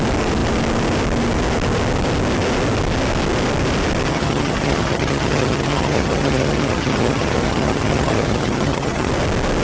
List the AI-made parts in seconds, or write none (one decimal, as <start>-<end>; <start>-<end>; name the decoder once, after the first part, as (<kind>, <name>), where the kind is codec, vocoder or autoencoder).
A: 4.1-9.1 (vocoder, HiFi-GAN)